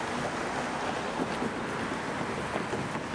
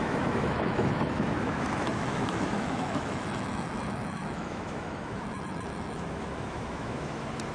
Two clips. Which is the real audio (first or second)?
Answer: first